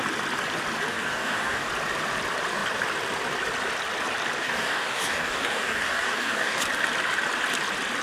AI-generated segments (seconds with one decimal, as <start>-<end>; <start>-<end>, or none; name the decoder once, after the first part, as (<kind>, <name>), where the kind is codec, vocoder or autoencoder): 0.9-1.7 (codec, DAC); 4.4-6.6